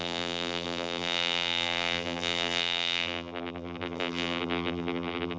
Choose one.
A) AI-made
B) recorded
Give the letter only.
A